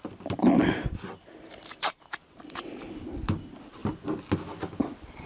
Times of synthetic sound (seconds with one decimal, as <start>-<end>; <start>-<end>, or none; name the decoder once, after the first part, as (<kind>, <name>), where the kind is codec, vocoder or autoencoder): 0.6-2.9 (vocoder, BigVGAN v2)